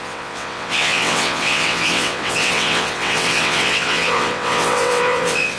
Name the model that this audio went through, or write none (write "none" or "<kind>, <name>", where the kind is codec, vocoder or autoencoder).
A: vocoder, WaveNeXt